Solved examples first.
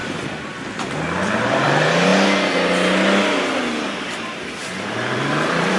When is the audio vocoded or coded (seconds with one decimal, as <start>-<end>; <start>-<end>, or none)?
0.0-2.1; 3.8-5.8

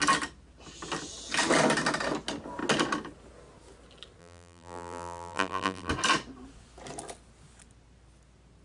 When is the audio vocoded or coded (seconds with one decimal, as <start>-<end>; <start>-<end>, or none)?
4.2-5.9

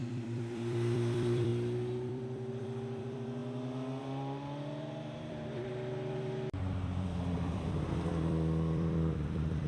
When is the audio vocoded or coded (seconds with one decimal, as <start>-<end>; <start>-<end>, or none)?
0.0-3.4; 4.0-9.7

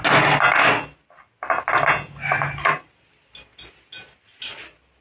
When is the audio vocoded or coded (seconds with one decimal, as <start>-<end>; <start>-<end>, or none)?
none

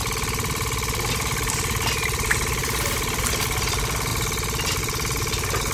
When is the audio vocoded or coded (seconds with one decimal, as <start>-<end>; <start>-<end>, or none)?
1.1-2.6; 3.2-4.1; 4.8-5.7